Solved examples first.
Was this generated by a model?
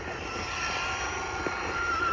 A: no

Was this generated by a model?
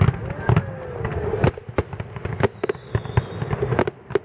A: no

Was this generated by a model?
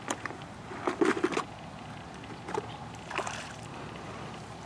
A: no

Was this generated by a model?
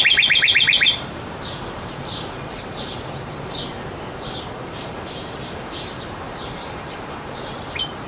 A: yes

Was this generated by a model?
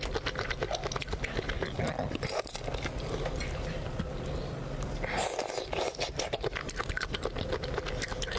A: no